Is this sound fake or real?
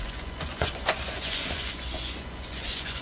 fake